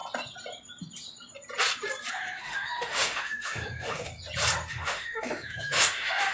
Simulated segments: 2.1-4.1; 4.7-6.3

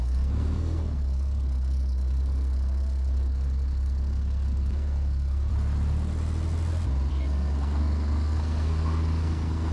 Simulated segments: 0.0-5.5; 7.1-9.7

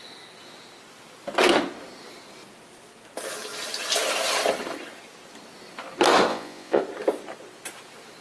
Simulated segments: 6.3-6.8

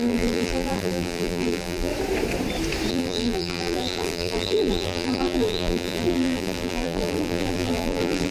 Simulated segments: 0.0-1.9; 2.9-8.3

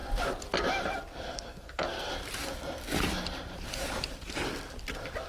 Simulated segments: 1.2-2.1

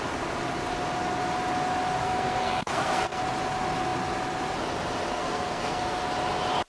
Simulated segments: 2.0-3.2; 5.1-6.1

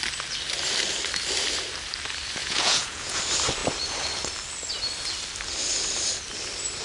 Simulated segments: 2.4-3.2

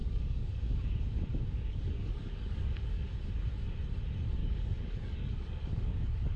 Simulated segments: 0.0-0.8; 1.3-3.1; 4.4-6.4